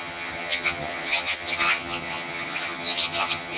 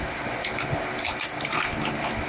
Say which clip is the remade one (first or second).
first